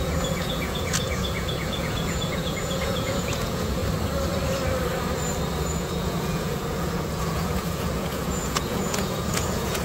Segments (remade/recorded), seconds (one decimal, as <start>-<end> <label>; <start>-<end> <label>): 0.0-3.8 remade; 3.8-5.7 recorded; 5.7-9.8 remade